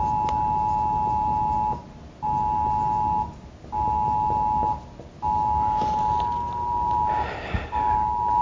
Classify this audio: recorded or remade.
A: recorded